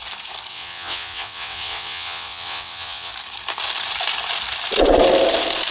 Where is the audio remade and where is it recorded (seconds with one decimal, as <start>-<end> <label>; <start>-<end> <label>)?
0.0-0.5 recorded; 0.5-3.1 remade; 3.1-5.7 recorded